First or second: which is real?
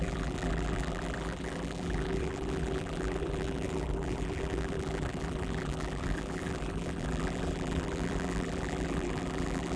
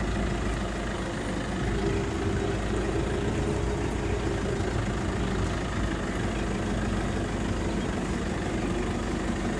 second